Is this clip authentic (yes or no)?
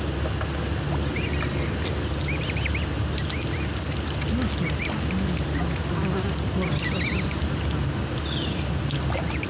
yes